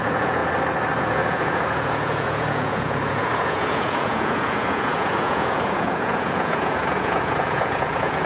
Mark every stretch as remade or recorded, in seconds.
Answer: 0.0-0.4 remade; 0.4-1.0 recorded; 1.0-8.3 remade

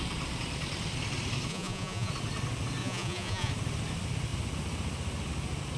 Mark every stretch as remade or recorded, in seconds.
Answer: 0.0-1.5 recorded; 1.5-2.1 remade; 2.1-2.8 recorded; 2.8-3.5 remade; 3.5-5.8 recorded

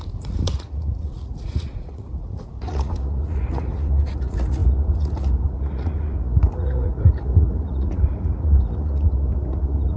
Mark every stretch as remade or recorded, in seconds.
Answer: 0.0-10.0 remade

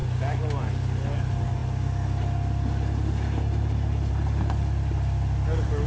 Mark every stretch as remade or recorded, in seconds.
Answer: 0.0-5.9 recorded

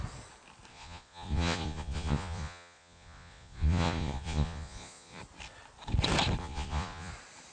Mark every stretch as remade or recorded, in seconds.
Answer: 0.0-0.7 recorded; 0.7-5.2 remade; 5.2-6.4 recorded; 6.4-7.1 remade; 7.1-7.5 recorded

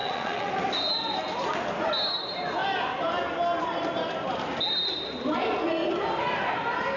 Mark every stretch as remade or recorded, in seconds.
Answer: 0.0-0.5 remade; 0.5-7.0 recorded

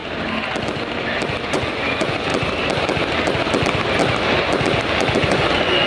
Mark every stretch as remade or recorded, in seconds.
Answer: 0.0-1.4 recorded; 1.4-2.3 remade; 2.3-5.3 recorded; 5.3-5.9 remade

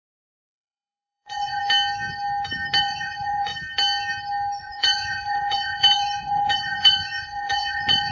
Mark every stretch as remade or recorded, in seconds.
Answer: 0.0-1.6 remade; 1.6-2.8 recorded; 2.8-3.5 remade; 3.5-4.6 recorded; 4.6-8.1 remade